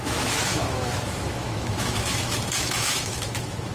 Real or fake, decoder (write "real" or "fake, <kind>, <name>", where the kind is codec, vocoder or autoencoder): fake, autoencoder, DAC-VAE